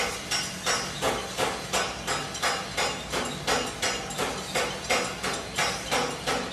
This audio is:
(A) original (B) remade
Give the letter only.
A